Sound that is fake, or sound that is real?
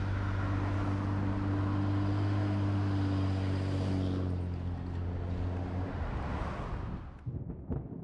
real